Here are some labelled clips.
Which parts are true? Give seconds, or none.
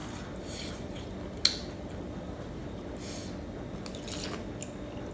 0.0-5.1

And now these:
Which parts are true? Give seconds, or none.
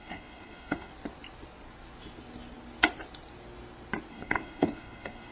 0.9-4.1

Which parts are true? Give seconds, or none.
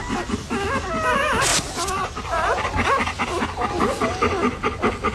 0.0-5.1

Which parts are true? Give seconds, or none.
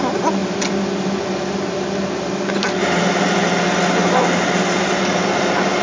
0.0-5.8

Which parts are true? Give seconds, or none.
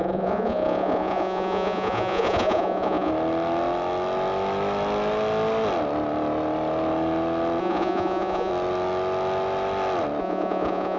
3.1-7.6; 8.5-10.2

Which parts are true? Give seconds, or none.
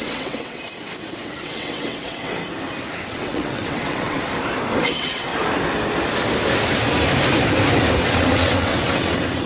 0.6-1.2; 2.4-3.1; 4.2-4.8; 5.3-8.0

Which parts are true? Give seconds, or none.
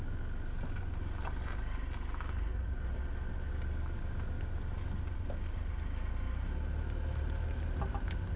0.0-8.4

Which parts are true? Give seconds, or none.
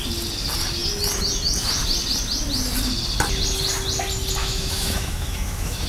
0.0-4.4